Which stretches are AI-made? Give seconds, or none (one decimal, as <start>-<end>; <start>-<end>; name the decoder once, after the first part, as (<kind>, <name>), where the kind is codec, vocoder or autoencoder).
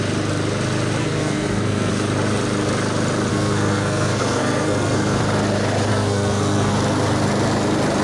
1.0-1.9 (codec, SNAC); 3.3-5.2; 5.9-6.7